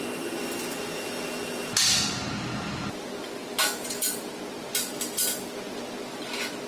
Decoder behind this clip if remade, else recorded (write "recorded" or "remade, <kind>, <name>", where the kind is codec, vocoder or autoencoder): recorded